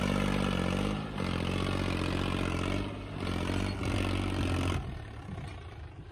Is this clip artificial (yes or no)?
no